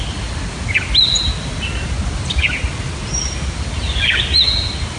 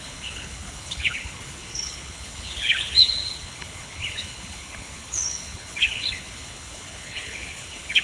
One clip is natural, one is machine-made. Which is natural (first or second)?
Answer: first